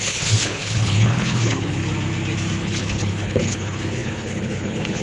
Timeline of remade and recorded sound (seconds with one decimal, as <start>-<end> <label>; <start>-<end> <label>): 0.0-1.8 remade; 1.8-2.6 recorded; 2.6-5.0 remade